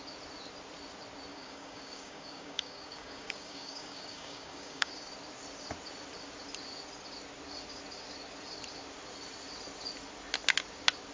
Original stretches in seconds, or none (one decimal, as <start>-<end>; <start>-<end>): 0.0-1.3; 4.9-11.1